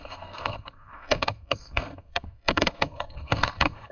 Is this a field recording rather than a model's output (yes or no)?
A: no